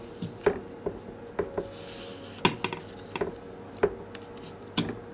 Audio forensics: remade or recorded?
recorded